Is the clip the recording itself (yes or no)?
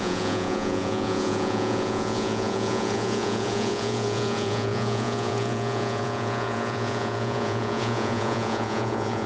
no